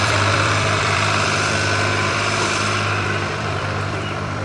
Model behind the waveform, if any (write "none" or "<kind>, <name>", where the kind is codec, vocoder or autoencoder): vocoder, BigVGAN v2